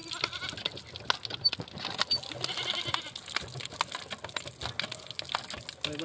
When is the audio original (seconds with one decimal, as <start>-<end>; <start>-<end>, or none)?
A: 0.0-6.0